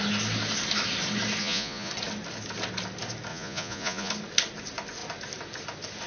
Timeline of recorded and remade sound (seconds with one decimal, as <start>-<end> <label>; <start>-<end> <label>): 0.0-1.4 recorded; 1.4-1.9 remade; 1.9-3.3 recorded; 3.3-4.1 remade; 4.1-6.1 recorded

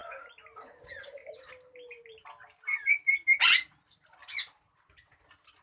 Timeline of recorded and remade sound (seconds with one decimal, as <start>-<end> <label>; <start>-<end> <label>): 0.0-5.6 recorded

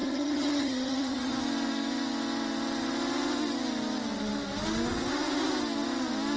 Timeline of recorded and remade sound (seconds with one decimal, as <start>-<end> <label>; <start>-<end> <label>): 0.0-1.3 remade; 1.3-6.4 recorded

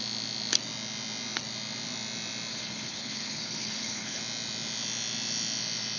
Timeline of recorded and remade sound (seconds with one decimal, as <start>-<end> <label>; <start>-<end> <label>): 0.0-2.5 recorded; 2.5-4.2 remade; 4.2-6.0 recorded

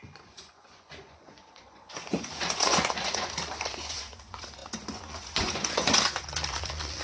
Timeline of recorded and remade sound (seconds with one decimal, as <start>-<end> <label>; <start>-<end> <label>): 0.0-7.0 remade

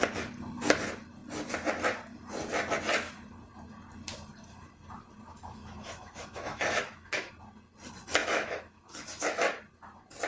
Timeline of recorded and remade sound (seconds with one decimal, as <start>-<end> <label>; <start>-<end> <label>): 0.0-5.3 recorded; 5.3-7.3 remade; 7.3-8.2 recorded; 8.2-9.6 remade; 9.6-10.3 recorded